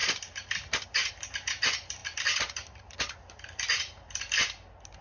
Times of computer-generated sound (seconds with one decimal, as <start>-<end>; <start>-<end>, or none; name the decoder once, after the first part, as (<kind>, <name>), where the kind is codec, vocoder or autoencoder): 0.0-1.1 (vocoder, BigVGAN v2); 2.0-4.2